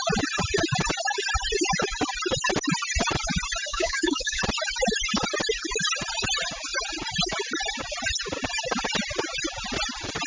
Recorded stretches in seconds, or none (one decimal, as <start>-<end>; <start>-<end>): 0.0-3.7; 4.4-10.3